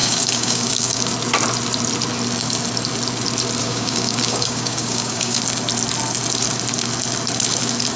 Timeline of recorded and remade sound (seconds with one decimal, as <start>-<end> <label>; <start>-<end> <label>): 0.0-1.1 remade; 1.1-3.6 recorded; 3.6-5.4 remade; 5.4-8.0 recorded